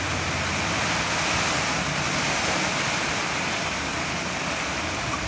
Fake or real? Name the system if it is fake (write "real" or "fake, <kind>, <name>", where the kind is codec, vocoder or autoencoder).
real